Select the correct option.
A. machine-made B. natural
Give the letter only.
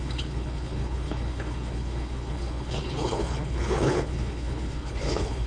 A